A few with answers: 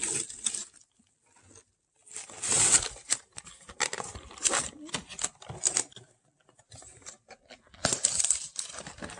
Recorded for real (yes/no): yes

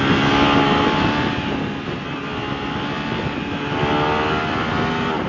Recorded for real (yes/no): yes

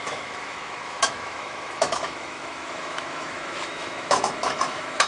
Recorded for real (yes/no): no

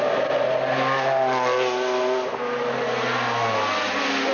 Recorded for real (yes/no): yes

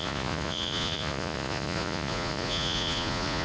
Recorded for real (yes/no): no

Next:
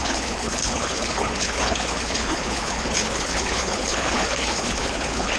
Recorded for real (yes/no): no